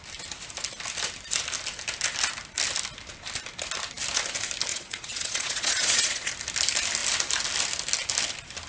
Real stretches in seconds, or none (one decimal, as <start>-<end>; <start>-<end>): 0.0-4.7; 6.3-8.7